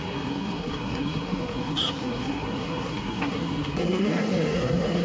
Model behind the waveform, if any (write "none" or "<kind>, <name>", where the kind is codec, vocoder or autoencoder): codec, SNAC